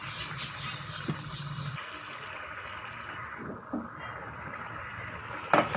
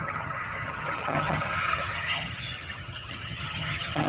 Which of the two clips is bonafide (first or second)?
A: first